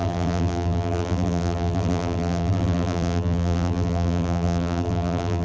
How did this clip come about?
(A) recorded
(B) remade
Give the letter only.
B